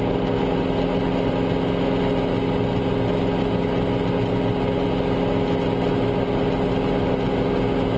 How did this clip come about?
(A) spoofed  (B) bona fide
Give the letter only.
B